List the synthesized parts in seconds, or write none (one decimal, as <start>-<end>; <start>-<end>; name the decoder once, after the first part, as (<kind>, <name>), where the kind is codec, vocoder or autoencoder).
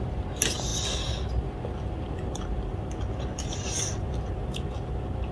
none